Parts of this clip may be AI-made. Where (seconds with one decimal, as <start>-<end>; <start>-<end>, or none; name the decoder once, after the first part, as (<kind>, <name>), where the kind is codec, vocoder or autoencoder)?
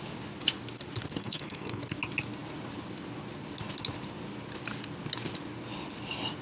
1.2-1.8 (codec, SNAC)